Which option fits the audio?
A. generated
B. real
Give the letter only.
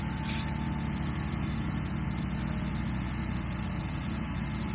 B